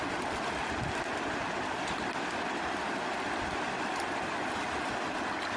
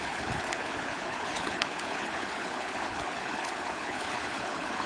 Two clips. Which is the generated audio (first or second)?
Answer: second